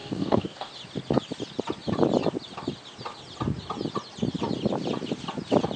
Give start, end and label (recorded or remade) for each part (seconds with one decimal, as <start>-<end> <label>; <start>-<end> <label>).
0.0-0.7 remade; 0.7-5.8 recorded